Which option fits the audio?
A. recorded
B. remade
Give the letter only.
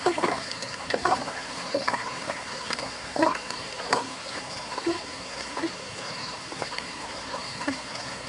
B